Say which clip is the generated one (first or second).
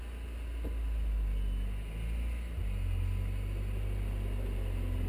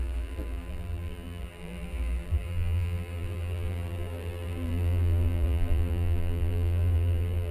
second